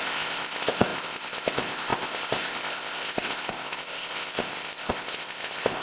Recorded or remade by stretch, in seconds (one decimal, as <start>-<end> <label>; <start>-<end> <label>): 0.0-5.8 remade